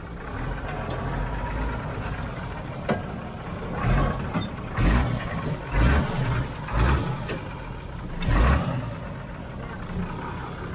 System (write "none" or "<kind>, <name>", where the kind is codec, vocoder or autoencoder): none